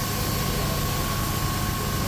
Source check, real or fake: real